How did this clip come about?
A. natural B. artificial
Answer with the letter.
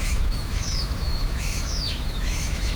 B